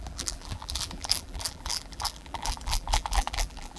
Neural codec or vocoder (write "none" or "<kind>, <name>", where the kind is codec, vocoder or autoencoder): vocoder, BigVGAN v2